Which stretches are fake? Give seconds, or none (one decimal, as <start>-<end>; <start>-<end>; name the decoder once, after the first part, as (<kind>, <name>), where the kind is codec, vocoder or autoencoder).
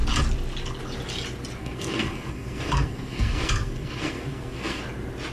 1.6-4.8 (codec, SNAC)